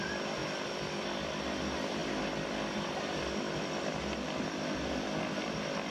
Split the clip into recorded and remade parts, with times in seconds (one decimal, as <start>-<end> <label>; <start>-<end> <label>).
0.0-5.9 remade